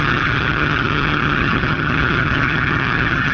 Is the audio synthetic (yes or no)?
yes